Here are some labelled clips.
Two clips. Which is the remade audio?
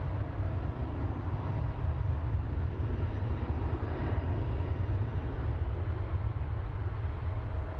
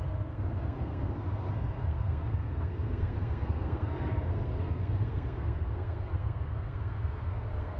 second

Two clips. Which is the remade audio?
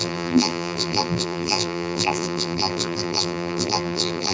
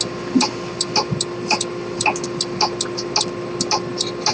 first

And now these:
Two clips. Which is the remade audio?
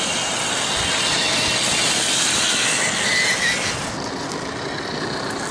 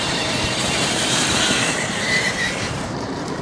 second